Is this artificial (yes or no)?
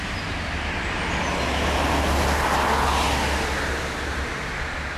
no